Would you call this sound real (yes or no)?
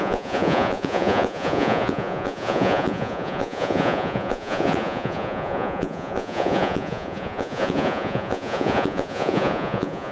no